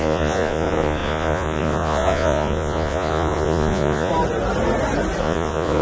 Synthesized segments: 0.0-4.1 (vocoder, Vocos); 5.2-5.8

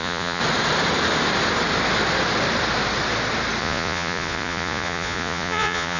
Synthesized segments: 0.0-0.4 (vocoder, Vocos); 3.6-6.0

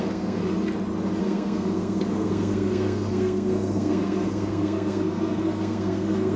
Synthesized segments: 0.0-0.4 (codec, SNAC); 1.2-6.4

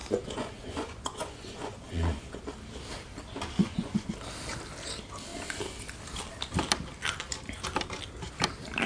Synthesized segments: 0.0-2.4 (vocoder, Vocos); 3.6-4.1

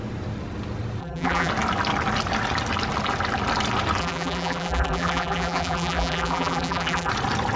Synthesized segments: 1.0-1.5 (vocoder, BigVGAN v2); 4.0-7.1

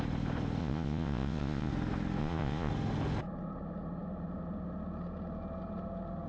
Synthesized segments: 0.6-1.7 (vocoder, Vocos); 2.2-2.7